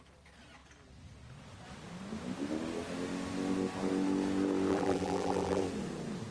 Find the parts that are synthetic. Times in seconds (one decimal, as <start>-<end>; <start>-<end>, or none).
4.7-5.6